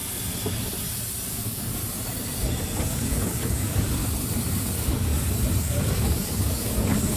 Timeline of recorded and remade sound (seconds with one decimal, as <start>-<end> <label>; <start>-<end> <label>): 0.0-1.3 recorded; 1.3-1.8 remade; 1.8-2.9 recorded; 2.9-4.0 remade; 4.0-4.6 recorded; 4.6-5.1 remade; 5.1-5.6 recorded; 5.6-7.2 remade